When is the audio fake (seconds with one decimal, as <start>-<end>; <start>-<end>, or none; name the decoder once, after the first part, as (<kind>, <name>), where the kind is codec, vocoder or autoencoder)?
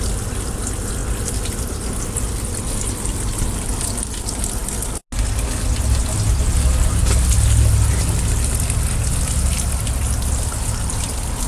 none